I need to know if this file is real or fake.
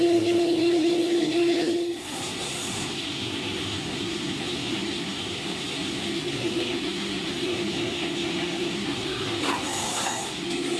fake